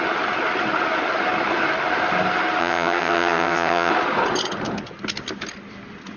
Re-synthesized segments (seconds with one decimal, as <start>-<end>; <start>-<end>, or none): 2.6-3.9